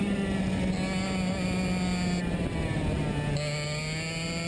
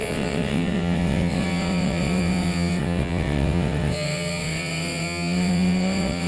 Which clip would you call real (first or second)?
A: first